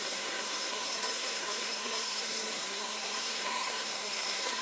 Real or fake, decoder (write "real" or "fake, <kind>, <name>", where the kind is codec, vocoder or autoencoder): fake, codec, SNAC